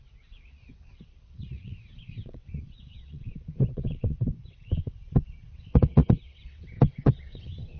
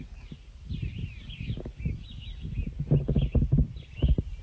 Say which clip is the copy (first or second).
first